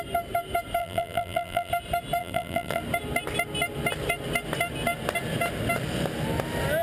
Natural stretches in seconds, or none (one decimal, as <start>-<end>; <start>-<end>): 0.0-0.8; 1.7-2.2; 2.8-6.8